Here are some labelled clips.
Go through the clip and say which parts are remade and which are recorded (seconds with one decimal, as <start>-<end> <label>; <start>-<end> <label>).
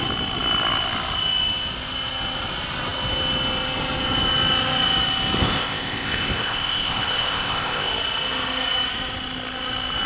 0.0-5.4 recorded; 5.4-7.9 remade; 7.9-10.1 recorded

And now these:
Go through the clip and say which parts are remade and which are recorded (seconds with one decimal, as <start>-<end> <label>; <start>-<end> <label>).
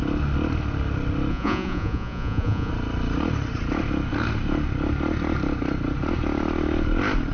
0.0-1.3 recorded; 1.3-2.7 remade; 2.7-7.3 recorded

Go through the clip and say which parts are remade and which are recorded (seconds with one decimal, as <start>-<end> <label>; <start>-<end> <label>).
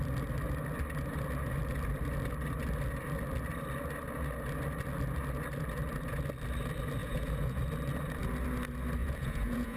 0.0-7.0 recorded; 7.0-7.6 remade; 7.6-9.0 recorded; 9.0-9.8 remade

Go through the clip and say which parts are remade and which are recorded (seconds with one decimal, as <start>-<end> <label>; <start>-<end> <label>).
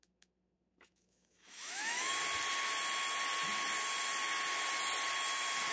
0.0-2.1 remade; 2.1-5.7 recorded